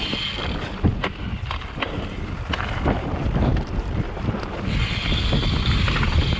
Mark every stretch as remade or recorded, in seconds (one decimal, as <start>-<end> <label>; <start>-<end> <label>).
0.0-6.4 recorded